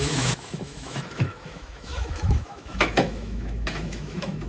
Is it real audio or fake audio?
fake